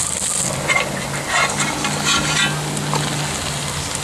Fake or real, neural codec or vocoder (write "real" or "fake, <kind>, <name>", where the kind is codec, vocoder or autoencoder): real